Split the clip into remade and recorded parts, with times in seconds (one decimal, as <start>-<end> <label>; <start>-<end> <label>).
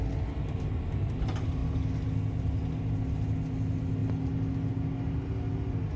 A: 0.0-6.0 recorded